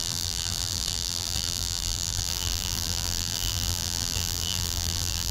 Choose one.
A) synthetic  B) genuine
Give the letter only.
A